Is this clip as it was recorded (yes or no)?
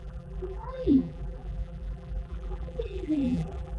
no